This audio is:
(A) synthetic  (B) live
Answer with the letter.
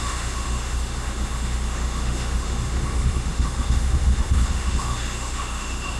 A